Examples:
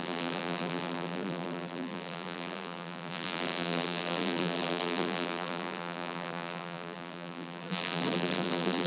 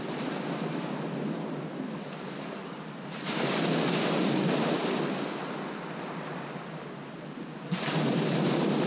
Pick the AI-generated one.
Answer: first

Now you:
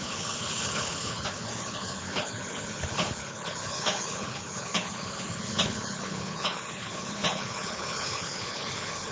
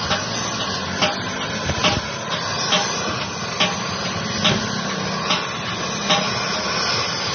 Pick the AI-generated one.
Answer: first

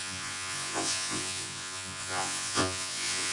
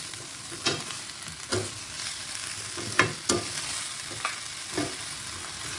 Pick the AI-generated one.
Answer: first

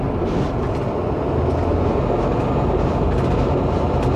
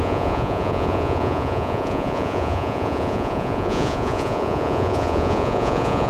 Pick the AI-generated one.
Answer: second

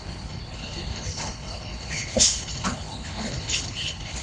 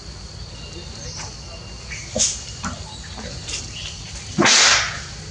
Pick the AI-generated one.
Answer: first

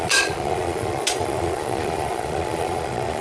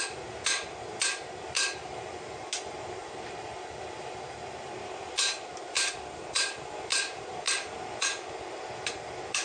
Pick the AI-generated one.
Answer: first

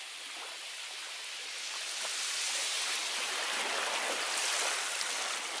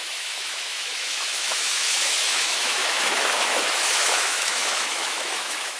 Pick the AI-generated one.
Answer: second